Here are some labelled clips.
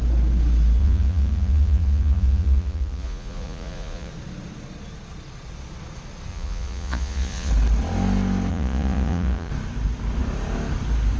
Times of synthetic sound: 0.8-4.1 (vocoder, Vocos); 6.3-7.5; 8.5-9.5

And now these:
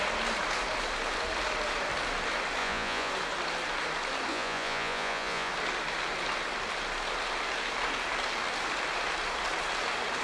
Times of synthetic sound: 2.6-3.1 (vocoder, Vocos); 4.3-5.5

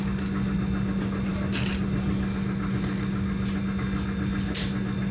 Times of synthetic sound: none

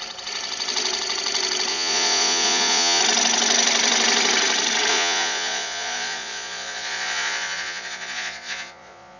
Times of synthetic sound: 1.7-3.0 (vocoder, Vocos); 4.9-9.2

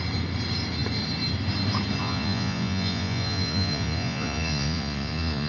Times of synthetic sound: 2.0-5.5 (vocoder, Vocos)

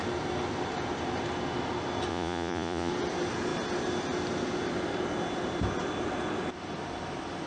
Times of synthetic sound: 2.1-2.9 (vocoder, Vocos)